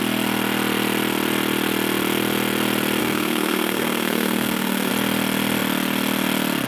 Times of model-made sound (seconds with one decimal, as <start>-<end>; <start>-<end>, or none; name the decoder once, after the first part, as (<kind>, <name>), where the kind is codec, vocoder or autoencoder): 3.0-4.9 (codec, SNAC)